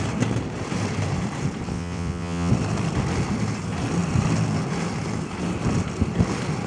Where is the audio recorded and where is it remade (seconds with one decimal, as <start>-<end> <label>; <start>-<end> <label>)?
0.0-1.7 recorded; 1.7-2.5 remade; 2.5-6.7 recorded